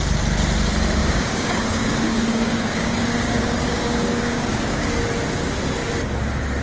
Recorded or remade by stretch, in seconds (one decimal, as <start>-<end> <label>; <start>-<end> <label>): 0.0-1.0 recorded; 1.0-5.0 remade; 5.0-6.6 recorded